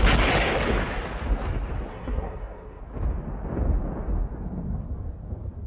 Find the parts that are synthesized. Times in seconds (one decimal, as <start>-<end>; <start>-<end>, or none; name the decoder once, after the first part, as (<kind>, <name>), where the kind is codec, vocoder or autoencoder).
1.9-2.8 (codec, SNAC)